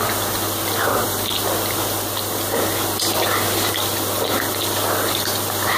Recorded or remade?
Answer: recorded